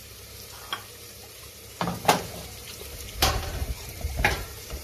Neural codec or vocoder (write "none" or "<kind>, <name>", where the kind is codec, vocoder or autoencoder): vocoder, BigVGAN v2